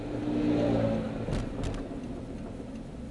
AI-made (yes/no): no